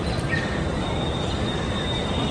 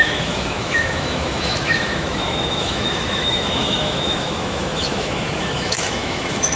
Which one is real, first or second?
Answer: first